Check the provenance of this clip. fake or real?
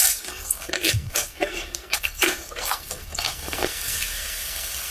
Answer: fake